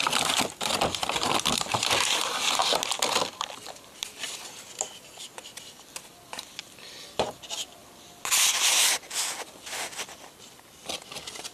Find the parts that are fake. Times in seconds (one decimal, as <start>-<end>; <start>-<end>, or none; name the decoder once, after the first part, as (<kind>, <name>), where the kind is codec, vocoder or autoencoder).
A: 0.0-2.6 (vocoder, BigVGAN v2); 3.4-11.5